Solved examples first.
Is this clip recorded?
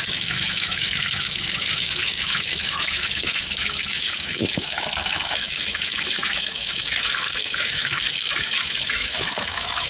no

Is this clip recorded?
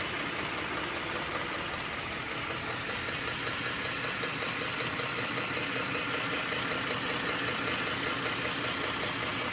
yes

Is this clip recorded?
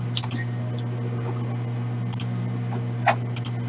yes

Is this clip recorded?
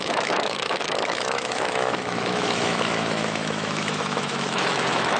no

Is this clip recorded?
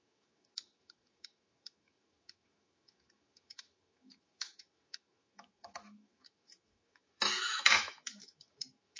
no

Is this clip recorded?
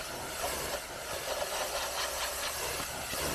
yes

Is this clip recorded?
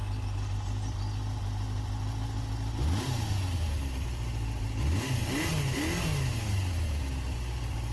yes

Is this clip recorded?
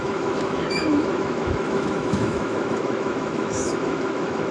no